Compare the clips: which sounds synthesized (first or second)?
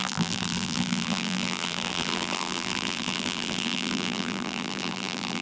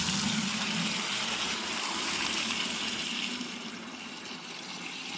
first